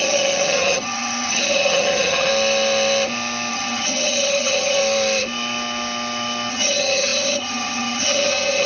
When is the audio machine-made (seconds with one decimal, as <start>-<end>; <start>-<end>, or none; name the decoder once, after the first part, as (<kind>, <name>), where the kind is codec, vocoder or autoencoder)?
0.0-2.3 (vocoder, HiFi-GAN); 3.5-4.8; 6.5-8.7